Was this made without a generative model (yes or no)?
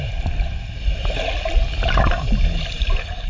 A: yes